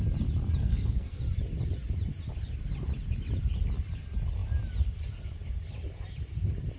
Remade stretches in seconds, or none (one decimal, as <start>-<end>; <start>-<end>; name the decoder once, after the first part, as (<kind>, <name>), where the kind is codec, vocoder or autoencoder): 0.6-1.2 (codec, SNAC)

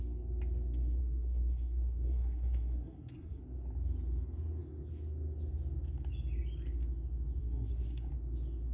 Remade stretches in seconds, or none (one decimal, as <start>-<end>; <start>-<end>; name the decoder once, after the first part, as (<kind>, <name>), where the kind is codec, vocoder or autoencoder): 1.0-3.4 (codec, SNAC); 7.4-8.1

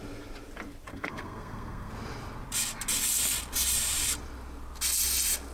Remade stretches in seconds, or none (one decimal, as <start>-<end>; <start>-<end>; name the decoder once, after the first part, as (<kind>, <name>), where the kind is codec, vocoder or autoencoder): 0.9-1.9 (codec, SNAC)